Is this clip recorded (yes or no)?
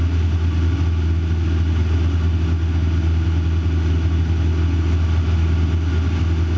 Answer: yes